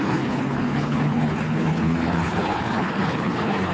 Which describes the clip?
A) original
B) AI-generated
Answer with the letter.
B